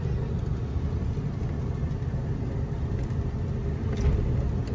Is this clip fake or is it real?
real